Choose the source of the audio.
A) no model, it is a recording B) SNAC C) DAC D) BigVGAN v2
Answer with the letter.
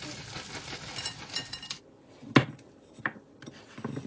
A